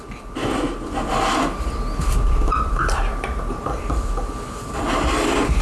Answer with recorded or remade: remade